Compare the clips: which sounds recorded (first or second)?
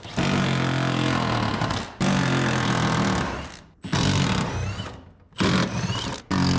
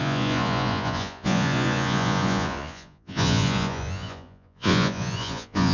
first